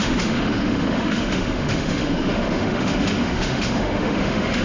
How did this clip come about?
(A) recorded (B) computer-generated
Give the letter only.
B